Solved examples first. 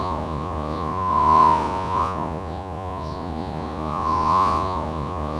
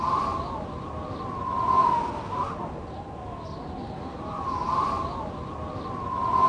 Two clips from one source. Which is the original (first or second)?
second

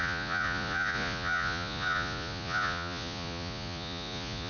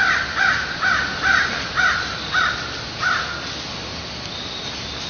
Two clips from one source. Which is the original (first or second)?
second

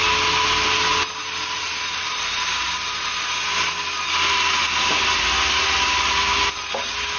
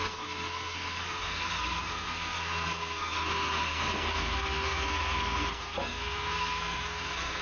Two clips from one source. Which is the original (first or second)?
first